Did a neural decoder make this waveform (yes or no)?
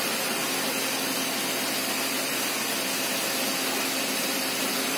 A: no